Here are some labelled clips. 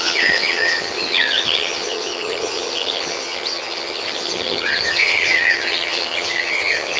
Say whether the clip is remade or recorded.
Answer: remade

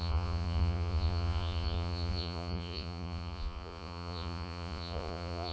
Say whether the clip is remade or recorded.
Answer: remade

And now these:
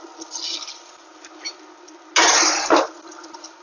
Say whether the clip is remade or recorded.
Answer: recorded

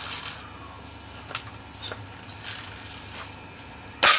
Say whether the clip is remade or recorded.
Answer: recorded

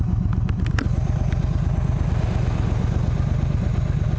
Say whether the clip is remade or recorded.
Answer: recorded